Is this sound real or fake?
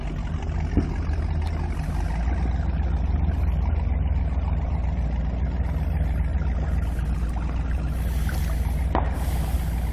real